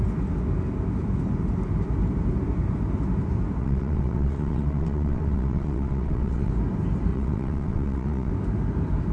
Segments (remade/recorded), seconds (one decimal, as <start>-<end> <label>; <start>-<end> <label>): 0.0-3.6 recorded; 3.6-6.5 remade; 6.5-7.1 recorded; 7.1-8.3 remade; 8.3-9.1 recorded